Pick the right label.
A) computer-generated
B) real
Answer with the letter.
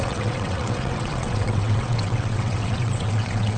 A